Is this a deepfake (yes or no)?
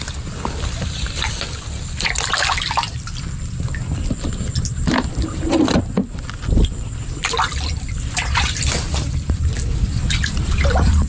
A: yes